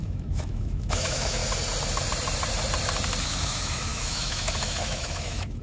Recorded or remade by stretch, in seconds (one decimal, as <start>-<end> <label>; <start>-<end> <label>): 0.0-1.4 remade; 1.4-3.2 recorded; 3.2-5.6 remade